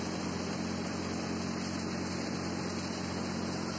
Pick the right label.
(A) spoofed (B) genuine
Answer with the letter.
B